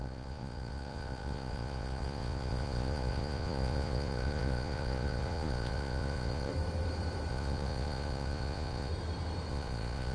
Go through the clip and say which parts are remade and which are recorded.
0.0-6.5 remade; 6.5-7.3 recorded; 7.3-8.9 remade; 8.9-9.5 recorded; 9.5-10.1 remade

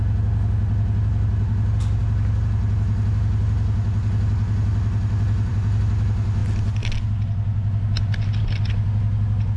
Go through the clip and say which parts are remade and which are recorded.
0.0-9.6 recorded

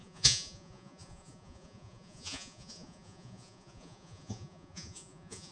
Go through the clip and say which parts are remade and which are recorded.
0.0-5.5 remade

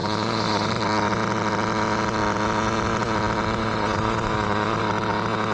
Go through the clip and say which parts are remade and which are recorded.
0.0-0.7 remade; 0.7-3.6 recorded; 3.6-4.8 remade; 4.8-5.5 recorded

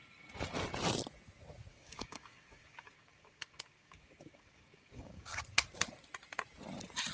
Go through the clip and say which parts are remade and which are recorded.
0.0-1.7 recorded; 1.7-5.4 remade; 5.4-7.1 recorded

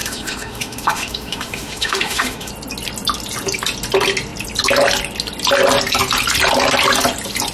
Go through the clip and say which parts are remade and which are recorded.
0.0-2.5 remade; 2.5-7.5 recorded

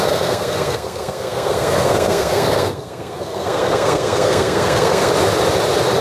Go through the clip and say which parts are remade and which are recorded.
0.0-5.1 remade; 5.1-6.0 recorded